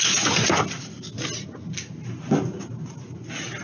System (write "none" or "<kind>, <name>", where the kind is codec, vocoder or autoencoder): none